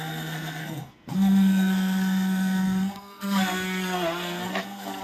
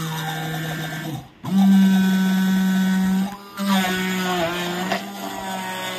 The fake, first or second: first